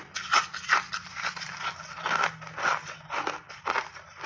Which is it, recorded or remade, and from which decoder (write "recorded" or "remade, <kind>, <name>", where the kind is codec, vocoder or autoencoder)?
recorded